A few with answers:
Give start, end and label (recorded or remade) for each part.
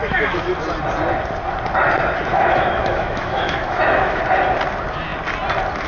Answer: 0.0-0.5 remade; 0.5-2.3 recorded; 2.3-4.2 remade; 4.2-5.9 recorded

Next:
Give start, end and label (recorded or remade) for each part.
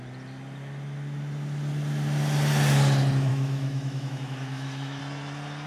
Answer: 0.0-3.3 recorded; 3.3-5.0 remade; 5.0-5.7 recorded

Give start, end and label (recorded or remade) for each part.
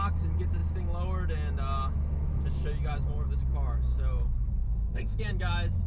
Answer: 0.0-4.6 recorded; 4.6-5.2 remade; 5.2-5.9 recorded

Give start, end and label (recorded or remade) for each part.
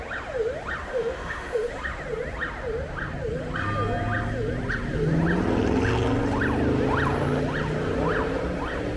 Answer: 0.0-0.8 recorded; 0.8-1.7 remade; 1.7-9.0 recorded